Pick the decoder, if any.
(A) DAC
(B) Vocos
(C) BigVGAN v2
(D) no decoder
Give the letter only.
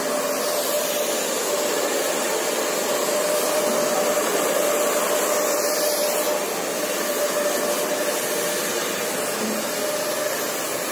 D